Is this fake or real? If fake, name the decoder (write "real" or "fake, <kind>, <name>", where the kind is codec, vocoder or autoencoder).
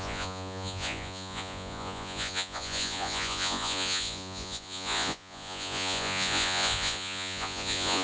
fake, vocoder, Vocos